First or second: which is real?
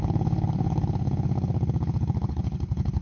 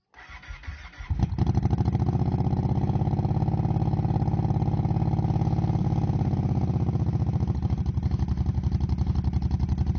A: second